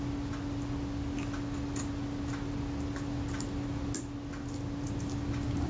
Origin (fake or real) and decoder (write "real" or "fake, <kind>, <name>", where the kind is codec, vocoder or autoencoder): real